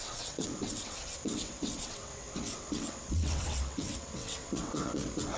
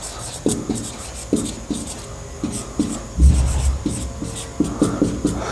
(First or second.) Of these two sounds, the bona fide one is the second